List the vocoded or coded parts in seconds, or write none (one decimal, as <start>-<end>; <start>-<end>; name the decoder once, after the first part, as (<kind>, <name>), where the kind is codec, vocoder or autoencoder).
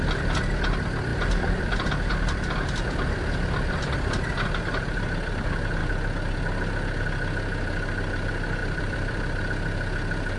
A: 8.6-9.4 (vocoder, BigVGAN v2)